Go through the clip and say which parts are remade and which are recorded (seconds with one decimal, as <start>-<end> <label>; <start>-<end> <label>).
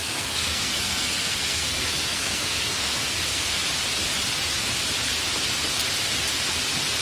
0.0-3.6 remade; 3.6-7.0 recorded